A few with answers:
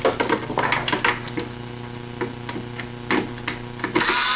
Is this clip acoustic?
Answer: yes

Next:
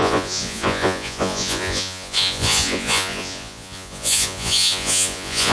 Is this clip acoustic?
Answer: no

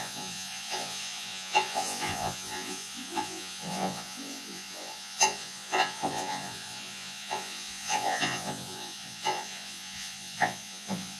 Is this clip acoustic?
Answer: no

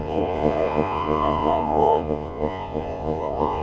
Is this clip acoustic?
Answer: no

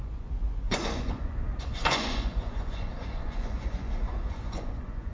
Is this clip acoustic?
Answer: no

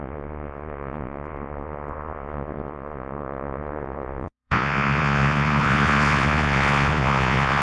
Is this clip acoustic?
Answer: no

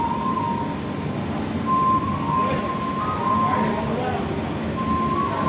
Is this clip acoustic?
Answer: yes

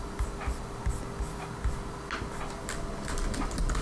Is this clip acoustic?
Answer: yes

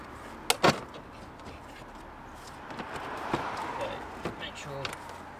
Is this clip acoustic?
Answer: yes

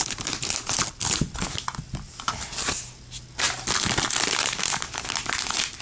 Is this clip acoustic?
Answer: yes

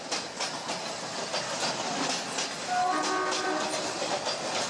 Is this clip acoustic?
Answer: yes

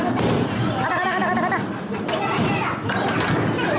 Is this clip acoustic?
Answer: yes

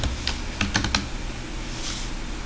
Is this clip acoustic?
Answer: yes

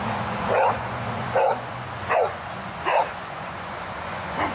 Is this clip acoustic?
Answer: no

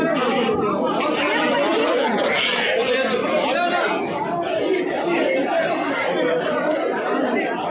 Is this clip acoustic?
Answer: yes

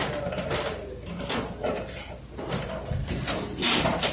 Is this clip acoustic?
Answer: yes